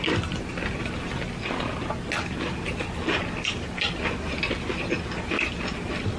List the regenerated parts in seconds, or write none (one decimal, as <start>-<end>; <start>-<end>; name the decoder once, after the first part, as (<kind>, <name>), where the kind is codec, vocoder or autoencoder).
none